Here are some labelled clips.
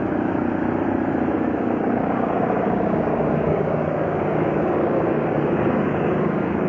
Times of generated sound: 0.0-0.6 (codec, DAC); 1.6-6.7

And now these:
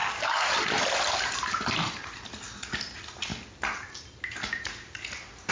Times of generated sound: 0.0-0.5 (codec, DAC)

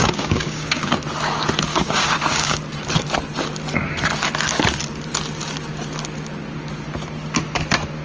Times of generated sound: 0.0-0.9 (codec, DAC); 1.7-2.6

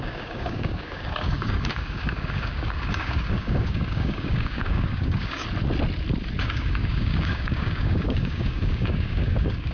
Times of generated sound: 0.0-5.4 (codec, DAC); 6.4-9.7